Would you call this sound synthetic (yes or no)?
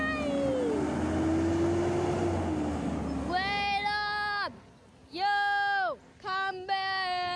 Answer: no